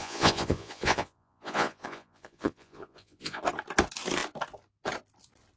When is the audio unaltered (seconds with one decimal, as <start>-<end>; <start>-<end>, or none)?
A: 3.4-5.6